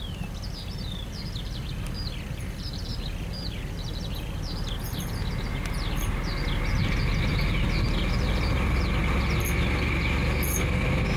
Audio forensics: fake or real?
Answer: real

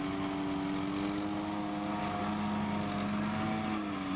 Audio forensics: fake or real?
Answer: real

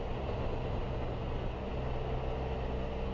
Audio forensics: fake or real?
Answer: real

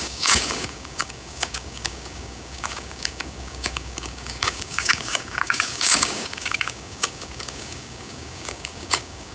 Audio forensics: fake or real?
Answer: fake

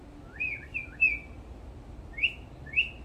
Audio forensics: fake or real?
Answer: real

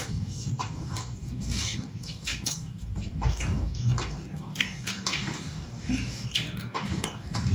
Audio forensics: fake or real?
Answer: fake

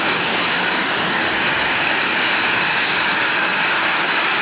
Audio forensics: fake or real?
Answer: fake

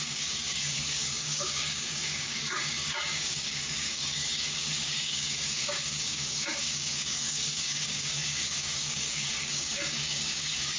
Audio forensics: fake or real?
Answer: fake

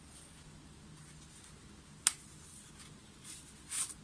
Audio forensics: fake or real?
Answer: real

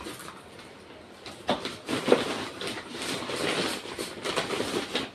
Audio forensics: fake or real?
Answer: real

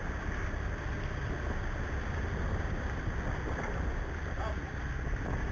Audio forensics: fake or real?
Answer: real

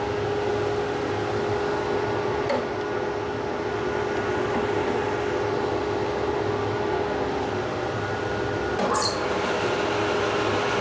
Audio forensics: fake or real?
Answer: real